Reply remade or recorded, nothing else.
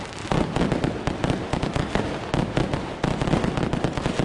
recorded